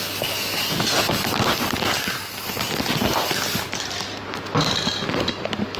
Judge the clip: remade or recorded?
recorded